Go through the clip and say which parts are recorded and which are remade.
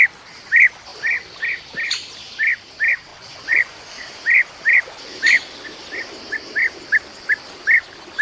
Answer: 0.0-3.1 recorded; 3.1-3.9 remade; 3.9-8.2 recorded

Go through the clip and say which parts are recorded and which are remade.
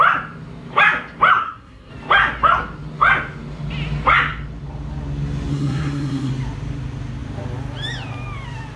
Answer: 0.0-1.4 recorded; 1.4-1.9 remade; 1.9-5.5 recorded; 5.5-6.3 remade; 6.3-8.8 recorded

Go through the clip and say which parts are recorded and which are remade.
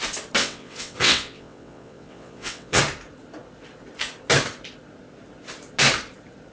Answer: 0.0-0.4 recorded; 0.4-2.8 remade; 2.8-6.5 recorded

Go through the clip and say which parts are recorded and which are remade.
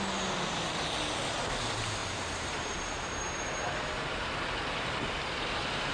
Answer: 0.0-2.0 recorded; 2.0-4.1 remade; 4.1-5.9 recorded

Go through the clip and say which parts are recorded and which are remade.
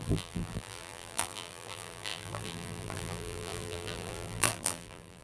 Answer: 0.0-5.2 remade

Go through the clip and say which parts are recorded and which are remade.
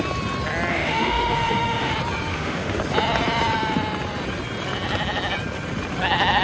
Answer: 0.0-0.7 recorded; 0.7-1.9 remade; 1.9-2.3 recorded; 2.3-2.8 remade; 2.8-6.4 recorded